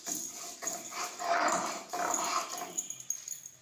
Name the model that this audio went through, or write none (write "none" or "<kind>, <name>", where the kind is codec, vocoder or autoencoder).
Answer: none